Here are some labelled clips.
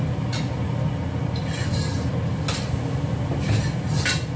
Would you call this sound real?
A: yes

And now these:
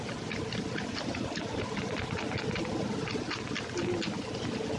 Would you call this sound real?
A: yes